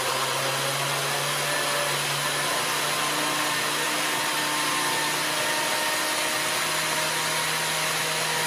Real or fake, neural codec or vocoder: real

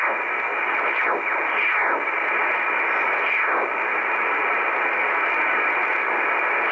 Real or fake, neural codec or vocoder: real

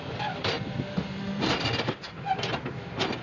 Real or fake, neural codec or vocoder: real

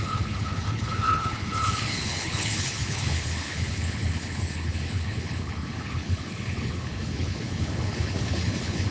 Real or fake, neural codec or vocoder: fake, codec, HILCodec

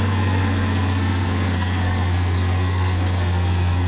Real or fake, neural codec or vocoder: fake, codec, SNAC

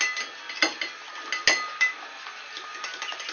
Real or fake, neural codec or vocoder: real